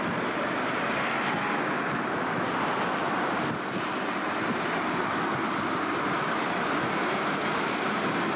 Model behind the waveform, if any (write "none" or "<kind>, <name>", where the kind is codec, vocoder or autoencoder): none